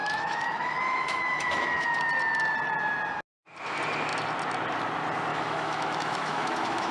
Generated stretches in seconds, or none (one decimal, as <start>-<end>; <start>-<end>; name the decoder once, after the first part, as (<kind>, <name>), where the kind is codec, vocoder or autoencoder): 0.0-2.0 (autoencoder, DAC-VAE); 5.3-6.9

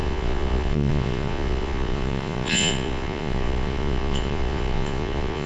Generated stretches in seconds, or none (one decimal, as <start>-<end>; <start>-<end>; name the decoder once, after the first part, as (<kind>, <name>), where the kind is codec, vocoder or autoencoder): 0.0-5.5 (vocoder, Vocos)

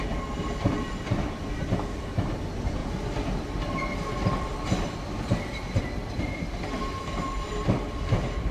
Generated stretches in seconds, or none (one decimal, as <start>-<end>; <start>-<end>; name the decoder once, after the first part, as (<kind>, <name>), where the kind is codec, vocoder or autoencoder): none

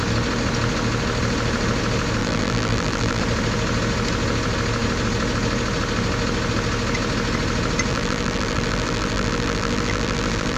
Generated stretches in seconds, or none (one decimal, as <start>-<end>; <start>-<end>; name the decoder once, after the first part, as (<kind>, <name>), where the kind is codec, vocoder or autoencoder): 2.2-3.2 (vocoder, BigVGAN v2); 7.9-10.6

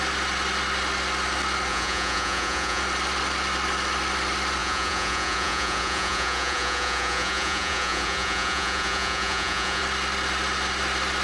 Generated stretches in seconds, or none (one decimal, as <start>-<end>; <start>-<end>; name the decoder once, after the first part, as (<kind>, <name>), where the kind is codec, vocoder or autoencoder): 1.7-2.8 (vocoder, Vocos); 4.6-9.8